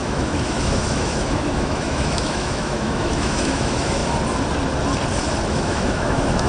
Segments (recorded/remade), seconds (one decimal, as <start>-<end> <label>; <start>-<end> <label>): 0.0-4.0 remade; 4.0-5.5 recorded; 5.5-6.5 remade